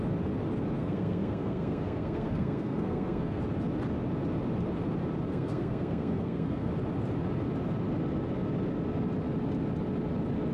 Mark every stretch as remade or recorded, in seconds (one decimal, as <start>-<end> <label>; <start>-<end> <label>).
0.0-0.8 recorded; 0.8-3.4 remade; 3.4-5.3 recorded; 5.3-6.7 remade; 6.7-10.5 recorded